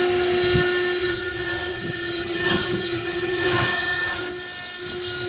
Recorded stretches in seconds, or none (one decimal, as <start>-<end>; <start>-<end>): 0.0-1.0; 4.2-5.3

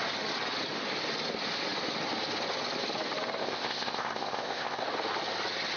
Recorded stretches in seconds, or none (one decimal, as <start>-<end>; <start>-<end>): 0.0-3.4; 4.8-5.8

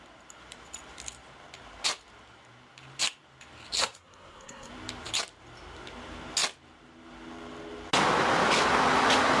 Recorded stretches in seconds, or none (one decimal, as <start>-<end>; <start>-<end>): 0.0-3.8; 4.7-9.4

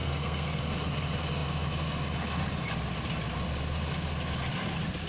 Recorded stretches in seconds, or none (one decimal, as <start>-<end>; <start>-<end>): 0.6-5.1

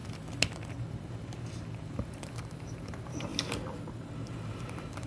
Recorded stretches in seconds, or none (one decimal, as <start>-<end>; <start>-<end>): 0.0-0.7; 3.3-4.0

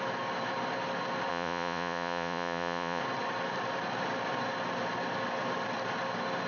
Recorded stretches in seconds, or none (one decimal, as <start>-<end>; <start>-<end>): 0.0-1.3; 3.0-6.5

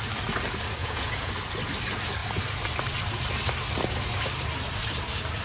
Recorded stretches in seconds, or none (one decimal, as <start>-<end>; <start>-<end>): 0.0-0.8; 1.3-5.4

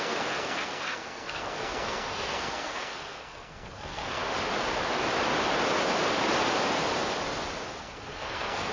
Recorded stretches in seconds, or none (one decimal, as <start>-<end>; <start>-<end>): 4.2-7.8